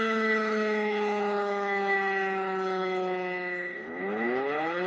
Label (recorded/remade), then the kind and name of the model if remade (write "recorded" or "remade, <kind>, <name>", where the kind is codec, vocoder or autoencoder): remade, codec, HILCodec